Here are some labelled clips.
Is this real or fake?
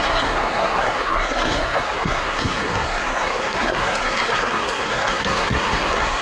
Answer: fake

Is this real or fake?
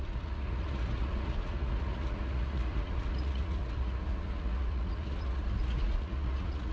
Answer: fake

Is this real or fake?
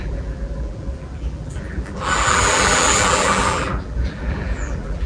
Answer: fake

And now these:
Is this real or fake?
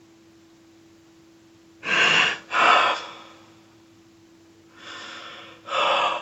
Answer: real